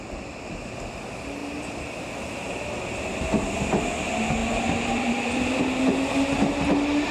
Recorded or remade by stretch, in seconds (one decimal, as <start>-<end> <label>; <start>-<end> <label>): 0.0-4.4 recorded; 4.4-5.6 remade; 5.6-7.1 recorded